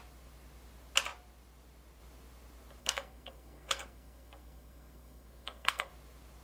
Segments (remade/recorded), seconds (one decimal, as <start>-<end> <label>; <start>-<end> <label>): 0.0-2.8 recorded; 2.8-5.9 remade; 5.9-6.4 recorded

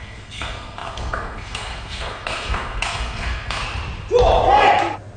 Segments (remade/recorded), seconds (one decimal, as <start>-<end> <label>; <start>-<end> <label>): 0.0-3.6 remade; 3.6-5.2 recorded

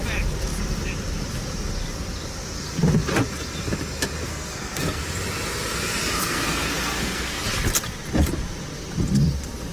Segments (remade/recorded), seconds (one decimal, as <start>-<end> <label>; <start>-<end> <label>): 0.0-4.3 recorded; 4.3-5.0 remade; 5.0-6.2 recorded; 6.2-7.4 remade; 7.4-9.7 recorded

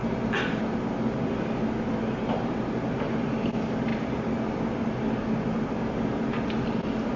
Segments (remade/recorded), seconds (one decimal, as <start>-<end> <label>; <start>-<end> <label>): 0.0-7.2 recorded

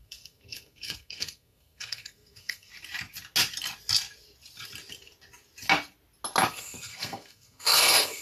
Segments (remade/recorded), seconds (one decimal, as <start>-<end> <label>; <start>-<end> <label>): 0.0-2.7 remade; 2.7-6.4 recorded; 6.4-8.2 remade

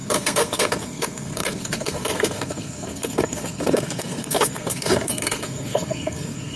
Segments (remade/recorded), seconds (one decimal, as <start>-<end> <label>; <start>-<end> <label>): 0.0-6.6 remade

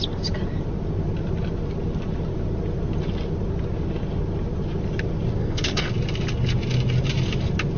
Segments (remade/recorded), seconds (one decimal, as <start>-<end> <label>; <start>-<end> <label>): 0.0-5.4 recorded; 5.4-5.9 remade; 5.9-7.8 recorded

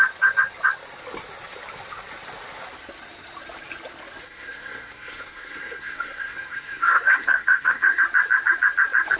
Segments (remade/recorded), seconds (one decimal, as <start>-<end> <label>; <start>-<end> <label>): 0.0-4.2 recorded; 4.2-8.0 remade; 8.0-9.2 recorded